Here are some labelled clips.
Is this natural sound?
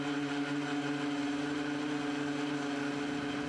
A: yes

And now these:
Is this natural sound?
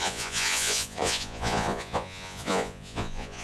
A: no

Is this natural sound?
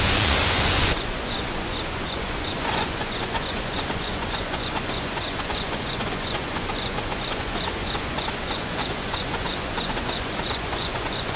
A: no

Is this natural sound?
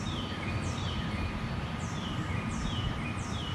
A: no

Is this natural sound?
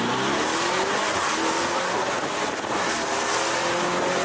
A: yes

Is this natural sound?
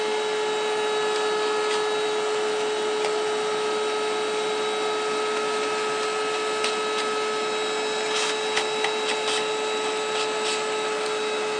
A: yes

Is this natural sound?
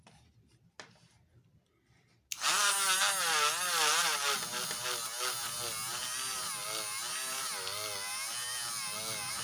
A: yes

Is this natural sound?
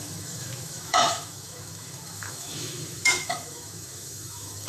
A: no